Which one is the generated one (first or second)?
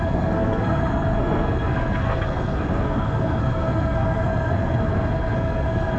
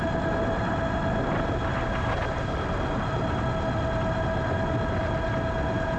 first